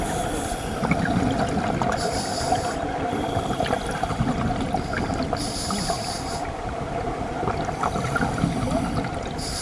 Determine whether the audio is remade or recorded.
recorded